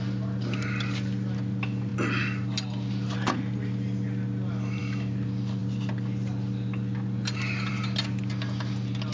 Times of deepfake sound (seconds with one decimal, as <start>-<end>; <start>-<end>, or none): none